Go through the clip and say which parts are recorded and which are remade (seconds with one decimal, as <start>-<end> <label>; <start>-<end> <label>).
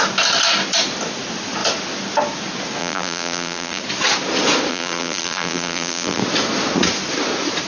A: 0.0-2.8 recorded; 2.8-3.8 remade; 3.8-4.7 recorded; 4.7-6.2 remade; 6.2-7.7 recorded